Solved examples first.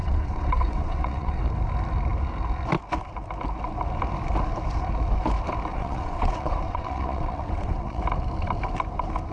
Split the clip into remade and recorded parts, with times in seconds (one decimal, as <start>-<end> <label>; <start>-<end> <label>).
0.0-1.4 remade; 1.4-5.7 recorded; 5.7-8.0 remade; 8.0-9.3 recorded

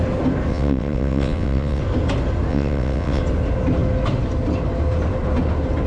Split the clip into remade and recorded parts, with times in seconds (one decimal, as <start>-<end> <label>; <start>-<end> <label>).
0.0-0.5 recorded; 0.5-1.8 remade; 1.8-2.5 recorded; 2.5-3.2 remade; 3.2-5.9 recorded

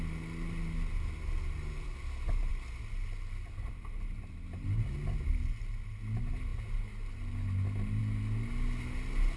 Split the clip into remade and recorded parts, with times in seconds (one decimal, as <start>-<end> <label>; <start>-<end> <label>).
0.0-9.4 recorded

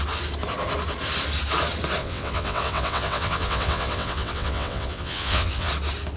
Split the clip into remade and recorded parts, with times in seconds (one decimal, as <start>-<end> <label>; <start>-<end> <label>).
0.0-2.0 recorded; 2.0-5.7 remade; 5.7-6.2 recorded